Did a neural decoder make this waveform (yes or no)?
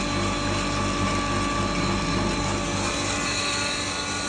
no